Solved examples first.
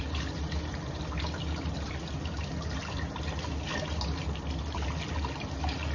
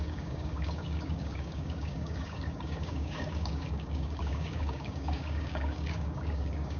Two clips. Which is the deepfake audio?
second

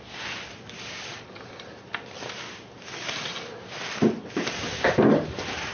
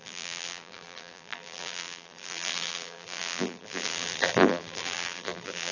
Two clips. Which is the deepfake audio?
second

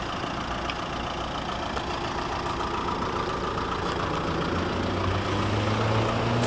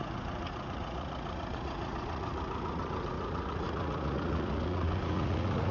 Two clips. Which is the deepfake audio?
second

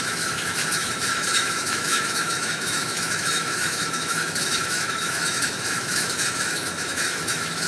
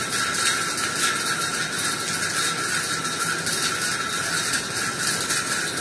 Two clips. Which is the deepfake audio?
first